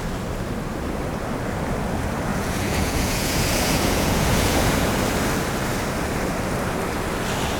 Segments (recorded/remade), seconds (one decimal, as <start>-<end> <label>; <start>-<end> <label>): 0.0-2.3 recorded; 2.3-4.9 remade; 4.9-7.6 recorded